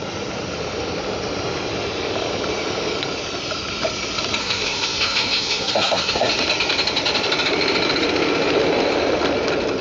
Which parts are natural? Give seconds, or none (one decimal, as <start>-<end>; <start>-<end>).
0.0-4.4; 6.3-9.8